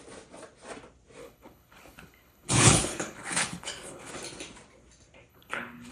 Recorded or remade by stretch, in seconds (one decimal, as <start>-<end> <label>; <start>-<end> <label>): 0.0-1.2 recorded; 1.2-4.1 remade; 4.1-5.3 recorded; 5.3-5.9 remade